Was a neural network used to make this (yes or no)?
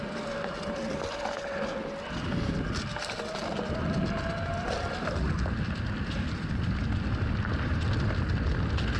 no